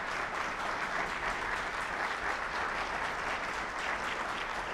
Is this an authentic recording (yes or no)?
yes